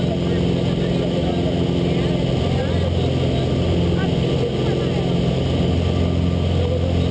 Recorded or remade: recorded